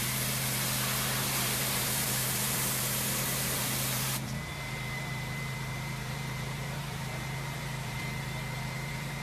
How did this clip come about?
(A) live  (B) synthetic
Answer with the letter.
B